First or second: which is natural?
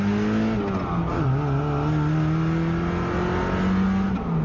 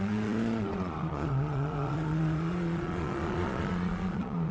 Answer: first